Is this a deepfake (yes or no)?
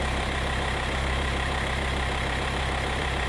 yes